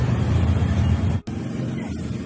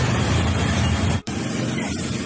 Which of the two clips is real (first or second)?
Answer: first